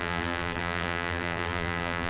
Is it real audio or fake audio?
fake